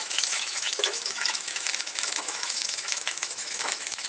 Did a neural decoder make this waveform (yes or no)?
yes